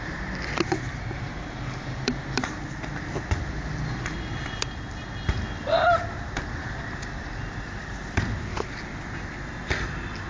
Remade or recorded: recorded